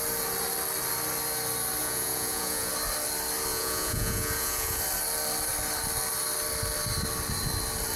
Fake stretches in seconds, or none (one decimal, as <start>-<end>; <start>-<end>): 1.8-2.7; 3.5-4.8

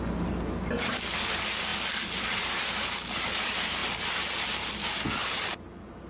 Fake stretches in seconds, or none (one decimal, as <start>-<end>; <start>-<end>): none

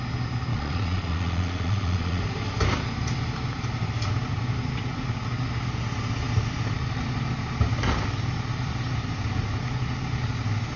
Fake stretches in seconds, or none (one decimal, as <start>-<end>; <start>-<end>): 0.5-2.2

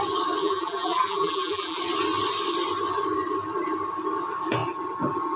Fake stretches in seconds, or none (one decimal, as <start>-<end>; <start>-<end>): 0.4-1.8

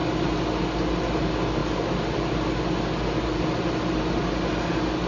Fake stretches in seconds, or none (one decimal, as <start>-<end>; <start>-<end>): none

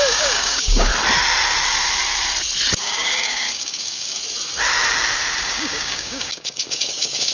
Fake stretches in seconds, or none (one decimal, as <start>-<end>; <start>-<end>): 0.0-0.9; 2.8-4.2; 5.4-7.3

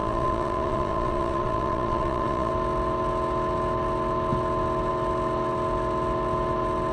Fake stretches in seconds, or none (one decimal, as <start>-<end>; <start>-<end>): 0.0-2.5

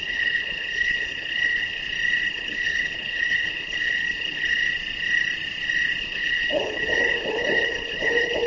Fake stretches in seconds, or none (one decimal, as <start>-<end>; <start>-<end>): 0.0-1.8; 2.3-4.6; 6.0-8.5